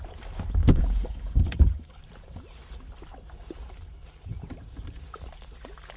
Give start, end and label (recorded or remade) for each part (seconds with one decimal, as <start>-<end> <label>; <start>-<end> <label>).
0.0-0.6 recorded; 0.6-2.0 remade; 2.0-6.0 recorded